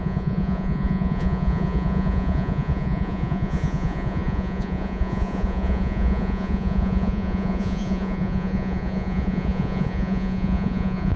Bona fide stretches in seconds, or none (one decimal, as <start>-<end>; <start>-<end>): none